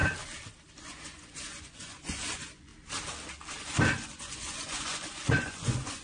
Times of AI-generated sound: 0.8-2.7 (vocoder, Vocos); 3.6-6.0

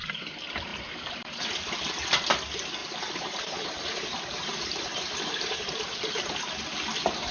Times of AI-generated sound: 0.7-1.4 (vocoder, BigVGAN v2); 2.8-5.7

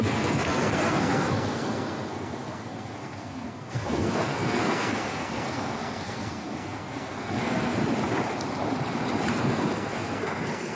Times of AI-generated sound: 0.0-7.8 (codec, SNAC); 9.4-10.8

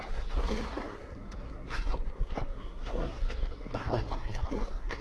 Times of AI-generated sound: 0.0-5.0 (codec, SNAC)

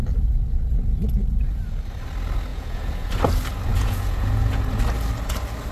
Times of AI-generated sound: 2.5-3.1 (vocoder, Vocos); 3.7-4.6

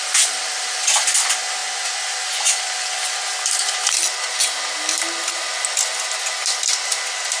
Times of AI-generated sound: none

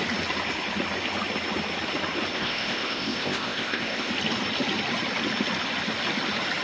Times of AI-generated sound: 2.3-4.1 (codec, ZipCodec)